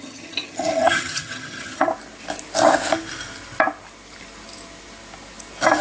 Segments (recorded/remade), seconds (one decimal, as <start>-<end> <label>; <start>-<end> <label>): 0.0-1.9 remade; 1.9-5.8 recorded